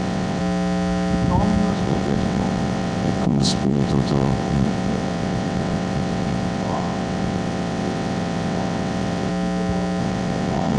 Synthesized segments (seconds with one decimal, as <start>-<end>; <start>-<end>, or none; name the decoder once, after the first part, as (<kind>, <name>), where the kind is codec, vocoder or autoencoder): 0.0-0.4 (vocoder, WaveNeXt); 1.7-9.3; 10.0-10.8